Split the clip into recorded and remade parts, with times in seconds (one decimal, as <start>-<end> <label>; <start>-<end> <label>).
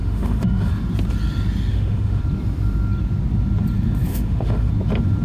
0.0-0.7 remade; 0.7-1.7 recorded; 1.7-2.2 remade; 2.2-4.1 recorded; 4.1-4.7 remade; 4.7-5.2 recorded